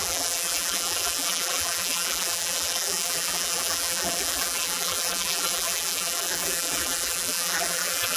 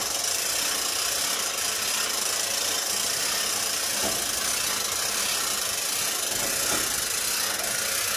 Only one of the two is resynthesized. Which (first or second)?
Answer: first